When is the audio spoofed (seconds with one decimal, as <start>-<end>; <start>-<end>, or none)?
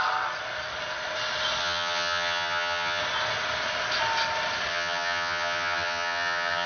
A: 1.6-3.0; 4.7-6.7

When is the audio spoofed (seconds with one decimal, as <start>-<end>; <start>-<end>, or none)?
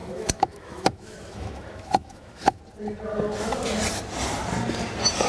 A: 0.0-2.6